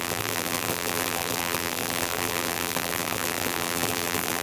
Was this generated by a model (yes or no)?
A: yes